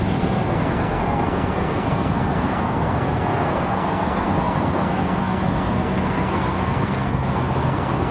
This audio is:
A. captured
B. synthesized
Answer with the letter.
B